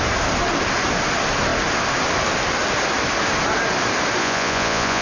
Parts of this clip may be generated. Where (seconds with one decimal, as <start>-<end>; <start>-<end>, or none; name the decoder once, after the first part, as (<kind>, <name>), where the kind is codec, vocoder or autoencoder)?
4.2-5.0 (vocoder, Vocos)